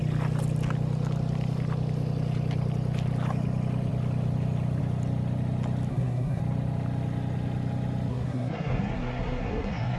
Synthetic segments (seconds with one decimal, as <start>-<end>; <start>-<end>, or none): 5.9-6.4; 8.1-10.0